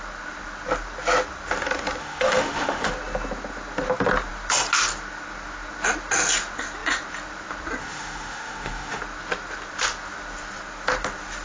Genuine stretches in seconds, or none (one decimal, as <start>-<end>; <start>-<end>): 0.0-2.0; 2.9-7.8; 9.0-11.4